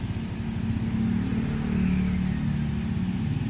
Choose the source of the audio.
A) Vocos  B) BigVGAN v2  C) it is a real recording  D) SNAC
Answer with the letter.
C